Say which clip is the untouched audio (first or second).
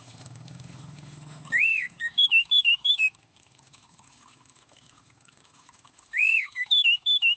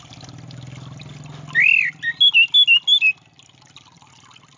second